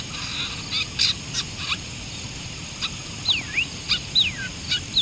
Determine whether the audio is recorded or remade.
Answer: recorded